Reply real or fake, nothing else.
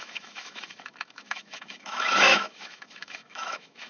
fake